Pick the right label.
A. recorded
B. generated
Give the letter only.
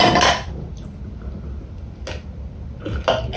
A